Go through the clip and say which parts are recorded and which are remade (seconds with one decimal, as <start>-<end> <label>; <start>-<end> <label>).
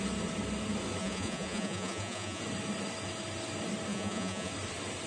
0.0-1.0 recorded; 1.0-2.4 remade; 2.4-3.9 recorded; 3.9-4.5 remade; 4.5-5.1 recorded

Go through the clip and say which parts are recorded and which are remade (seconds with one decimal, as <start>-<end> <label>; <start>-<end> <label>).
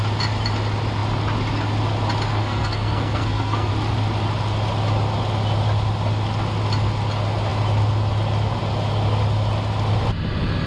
0.0-2.3 recorded; 2.3-3.7 remade; 3.7-10.7 recorded